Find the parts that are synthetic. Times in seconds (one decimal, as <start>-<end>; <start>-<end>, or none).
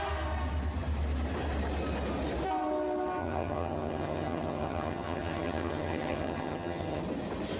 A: 3.2-7.0